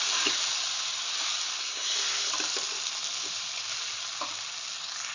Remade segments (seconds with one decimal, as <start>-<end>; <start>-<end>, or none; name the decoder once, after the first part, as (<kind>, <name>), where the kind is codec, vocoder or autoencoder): 1.6-2.3 (codec, SNAC)